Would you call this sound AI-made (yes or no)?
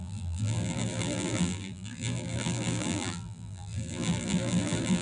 yes